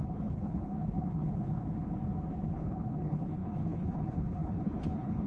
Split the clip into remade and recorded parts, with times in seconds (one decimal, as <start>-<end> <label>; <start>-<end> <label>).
0.0-1.6 remade; 1.6-2.3 recorded; 2.3-5.3 remade